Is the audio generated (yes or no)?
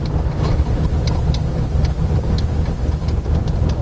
no